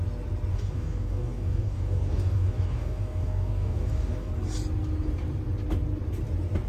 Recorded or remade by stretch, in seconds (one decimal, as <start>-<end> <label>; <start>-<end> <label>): 0.0-0.5 recorded; 0.5-4.3 remade; 4.3-6.7 recorded